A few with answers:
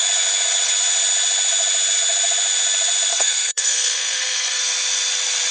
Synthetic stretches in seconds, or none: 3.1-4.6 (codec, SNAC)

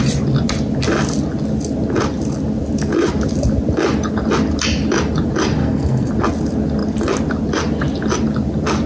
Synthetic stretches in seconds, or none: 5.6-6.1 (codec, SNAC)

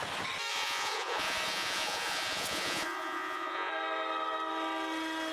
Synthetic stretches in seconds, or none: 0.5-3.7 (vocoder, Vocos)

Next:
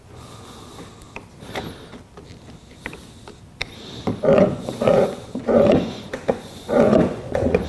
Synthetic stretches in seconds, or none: 0.0-0.7 (vocoder, Vocos); 4.2-7.7

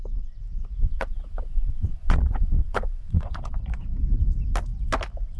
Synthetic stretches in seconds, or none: 0.8-3.6 (vocoder, Vocos)

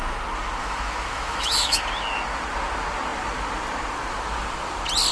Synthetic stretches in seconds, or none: 0.6-1.8 (autoencoder, DAC-VAE)

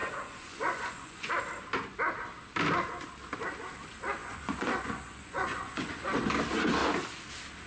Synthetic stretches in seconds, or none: 0.0-1.3 (vocoder, Vocos); 4.2-5.9

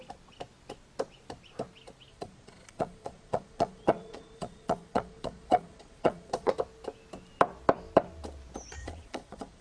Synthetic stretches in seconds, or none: 2.1-6.5 (vocoder, Vocos); 8.8-9.6